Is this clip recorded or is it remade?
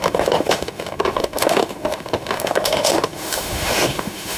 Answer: remade